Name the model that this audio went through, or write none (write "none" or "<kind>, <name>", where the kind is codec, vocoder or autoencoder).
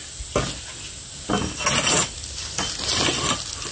none